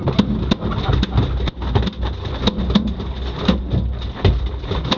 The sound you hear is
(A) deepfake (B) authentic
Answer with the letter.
B